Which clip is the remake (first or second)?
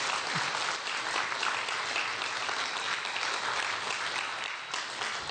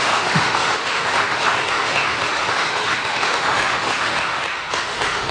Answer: second